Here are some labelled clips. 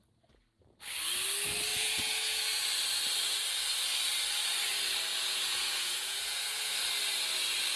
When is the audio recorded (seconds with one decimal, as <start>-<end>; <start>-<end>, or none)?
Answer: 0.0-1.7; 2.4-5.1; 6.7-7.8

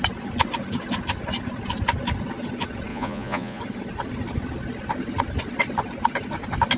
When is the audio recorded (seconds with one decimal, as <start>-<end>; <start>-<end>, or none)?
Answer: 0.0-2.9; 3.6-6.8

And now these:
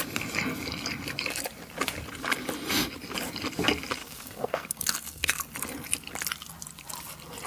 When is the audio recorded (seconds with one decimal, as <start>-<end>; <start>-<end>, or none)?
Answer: 0.0-4.0; 5.4-7.5

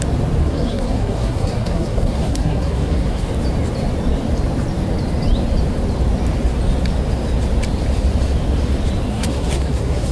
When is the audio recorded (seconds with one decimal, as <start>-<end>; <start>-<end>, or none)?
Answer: 0.0-0.4; 3.3-9.1